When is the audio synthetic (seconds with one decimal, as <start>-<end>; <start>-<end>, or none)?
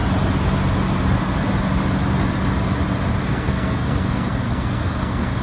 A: 3.2-5.4